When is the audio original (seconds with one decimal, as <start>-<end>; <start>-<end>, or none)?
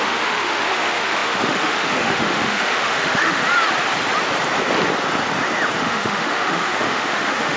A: 3.4-5.8